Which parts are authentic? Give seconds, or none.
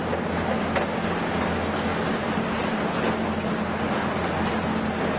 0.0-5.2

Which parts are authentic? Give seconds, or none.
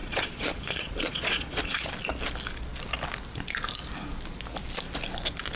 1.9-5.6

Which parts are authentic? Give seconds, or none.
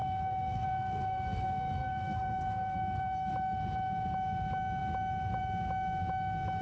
3.3-6.6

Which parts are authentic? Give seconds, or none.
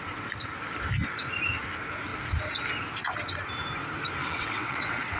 0.0-4.2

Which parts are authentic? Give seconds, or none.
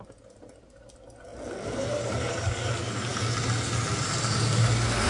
0.0-5.1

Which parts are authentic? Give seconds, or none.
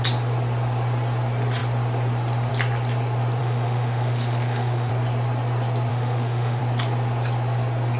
0.0-3.4; 4.9-5.9; 6.6-8.0